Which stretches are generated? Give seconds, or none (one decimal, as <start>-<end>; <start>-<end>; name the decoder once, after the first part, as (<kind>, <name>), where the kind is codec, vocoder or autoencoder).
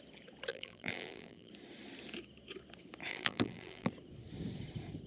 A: 0.5-1.5 (vocoder, BigVGAN v2); 3.1-3.9